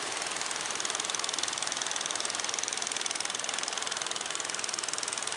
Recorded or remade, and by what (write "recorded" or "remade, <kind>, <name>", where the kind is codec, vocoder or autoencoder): remade, vocoder, BigVGAN v2